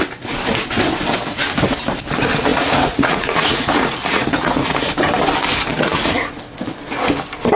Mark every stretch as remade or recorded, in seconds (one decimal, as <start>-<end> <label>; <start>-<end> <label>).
0.0-2.5 recorded; 2.5-4.9 remade; 4.9-5.7 recorded; 5.7-6.3 remade; 6.3-7.6 recorded